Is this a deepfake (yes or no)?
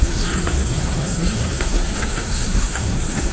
yes